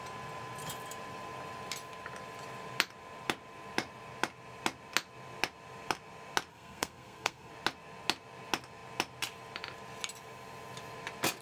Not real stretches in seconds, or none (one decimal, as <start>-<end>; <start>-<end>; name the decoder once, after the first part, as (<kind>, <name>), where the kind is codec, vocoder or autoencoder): 6.5-7.5 (codec, SNAC)